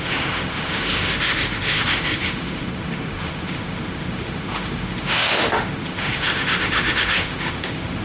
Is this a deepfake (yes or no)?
yes